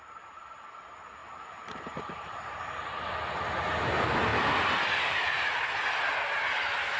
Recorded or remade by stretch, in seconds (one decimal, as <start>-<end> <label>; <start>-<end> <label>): 0.0-1.2 recorded; 1.2-2.6 remade; 2.6-7.0 recorded